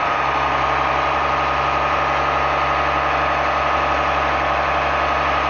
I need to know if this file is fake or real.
real